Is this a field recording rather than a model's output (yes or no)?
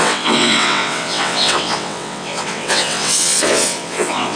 no